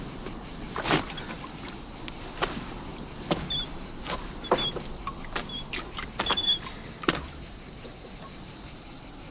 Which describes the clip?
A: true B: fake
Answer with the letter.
A